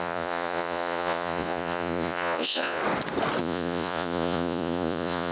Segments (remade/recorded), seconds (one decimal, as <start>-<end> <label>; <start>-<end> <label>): 0.0-2.8 remade; 2.8-3.4 recorded; 3.4-5.3 remade

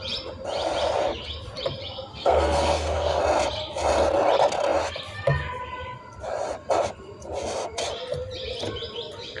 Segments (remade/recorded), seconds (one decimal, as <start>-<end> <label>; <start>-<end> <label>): 0.0-2.1 recorded; 2.1-3.2 remade; 3.2-9.4 recorded

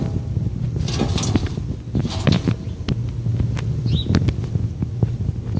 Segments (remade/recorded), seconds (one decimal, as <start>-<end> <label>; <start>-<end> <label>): 0.0-0.7 remade; 0.7-3.3 recorded; 3.3-5.6 remade

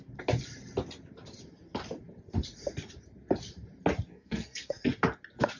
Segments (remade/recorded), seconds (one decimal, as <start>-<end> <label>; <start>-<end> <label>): 0.0-4.1 recorded; 4.1-4.8 remade; 4.8-5.6 recorded

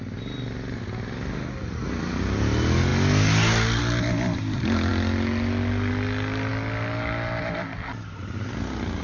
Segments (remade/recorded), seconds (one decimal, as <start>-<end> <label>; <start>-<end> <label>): 0.0-9.0 recorded

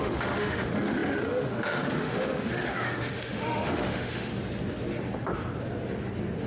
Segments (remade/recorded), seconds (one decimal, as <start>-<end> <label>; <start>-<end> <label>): 0.0-4.3 remade; 4.3-6.5 recorded

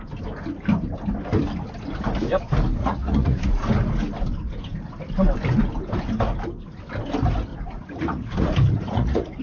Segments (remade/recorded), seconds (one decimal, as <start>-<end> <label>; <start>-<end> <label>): 0.0-2.8 recorded; 2.8-3.5 remade; 3.5-7.5 recorded; 7.5-9.4 remade

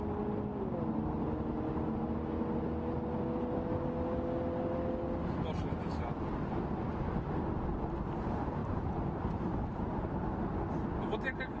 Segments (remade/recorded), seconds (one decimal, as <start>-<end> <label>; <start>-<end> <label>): 0.0-8.6 recorded; 8.6-9.8 remade; 9.8-11.6 recorded